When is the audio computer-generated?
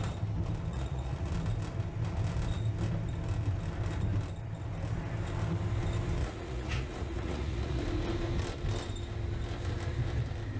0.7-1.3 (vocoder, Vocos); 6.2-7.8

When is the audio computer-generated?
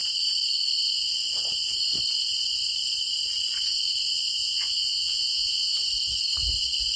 4.4-5.7 (vocoder, Vocos)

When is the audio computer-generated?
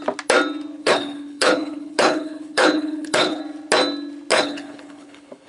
0.8-3.4 (codec, HILCodec); 4.3-5.5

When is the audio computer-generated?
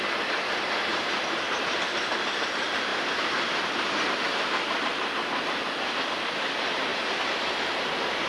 6.9-7.5 (vocoder, BigVGAN v2)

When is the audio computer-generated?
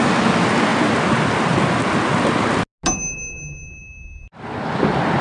none